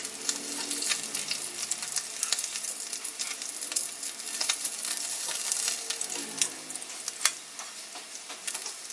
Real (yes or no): yes